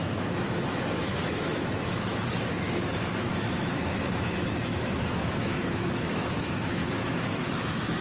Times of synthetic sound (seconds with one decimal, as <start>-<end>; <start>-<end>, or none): 0.0-8.0